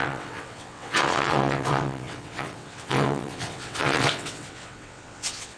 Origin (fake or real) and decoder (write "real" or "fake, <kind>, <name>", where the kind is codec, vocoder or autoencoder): fake, vocoder, WaveNeXt